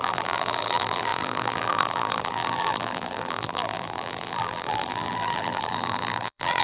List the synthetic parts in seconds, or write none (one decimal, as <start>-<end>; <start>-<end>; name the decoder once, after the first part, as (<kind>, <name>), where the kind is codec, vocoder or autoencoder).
0.0-6.6 (vocoder, BigVGAN v2)